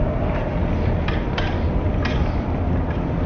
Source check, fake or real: real